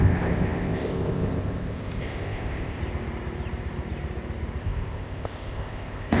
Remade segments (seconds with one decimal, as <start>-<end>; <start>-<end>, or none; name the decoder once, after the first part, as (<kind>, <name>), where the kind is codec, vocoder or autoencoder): 0.0-2.8 (codec, ZipCodec); 4.6-6.2

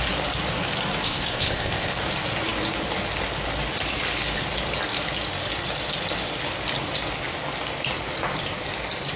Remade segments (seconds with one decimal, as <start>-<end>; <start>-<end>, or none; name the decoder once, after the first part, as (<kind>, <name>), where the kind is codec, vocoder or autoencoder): 1.0-1.9 (codec, ZipCodec)

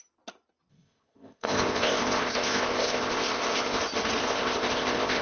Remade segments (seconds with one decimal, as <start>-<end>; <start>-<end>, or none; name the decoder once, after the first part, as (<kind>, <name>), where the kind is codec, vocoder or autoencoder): 0.7-3.8 (codec, ZipCodec); 4.2-5.2